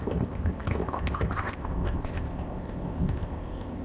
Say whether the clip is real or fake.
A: fake